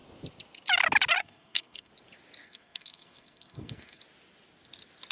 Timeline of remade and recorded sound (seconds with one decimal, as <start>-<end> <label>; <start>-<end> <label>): 0.0-1.2 recorded; 1.2-1.9 remade; 1.9-2.4 recorded; 2.4-4.0 remade; 4.0-5.1 recorded